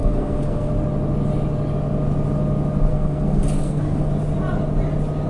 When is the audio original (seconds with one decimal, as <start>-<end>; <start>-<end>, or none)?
0.7-2.9; 4.1-5.3